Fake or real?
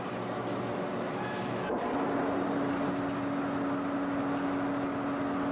real